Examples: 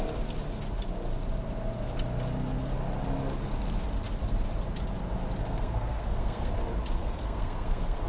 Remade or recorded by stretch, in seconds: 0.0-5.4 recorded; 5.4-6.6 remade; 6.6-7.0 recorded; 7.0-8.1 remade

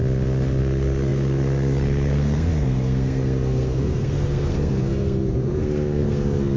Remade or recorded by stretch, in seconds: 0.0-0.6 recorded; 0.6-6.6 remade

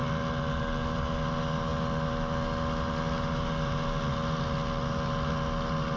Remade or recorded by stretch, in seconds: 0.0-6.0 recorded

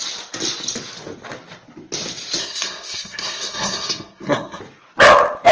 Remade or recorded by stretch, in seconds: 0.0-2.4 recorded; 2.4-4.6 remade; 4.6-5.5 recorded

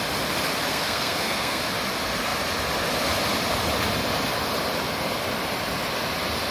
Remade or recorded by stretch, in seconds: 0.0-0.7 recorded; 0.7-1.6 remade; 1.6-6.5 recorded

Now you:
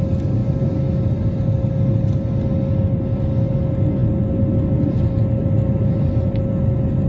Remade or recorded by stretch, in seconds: 0.0-7.1 recorded

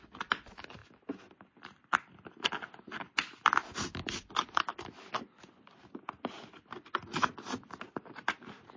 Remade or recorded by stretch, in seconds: 0.0-8.8 recorded

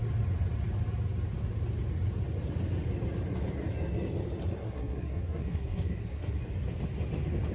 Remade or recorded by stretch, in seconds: 0.0-4.6 recorded; 4.6-6.4 remade; 6.4-7.5 recorded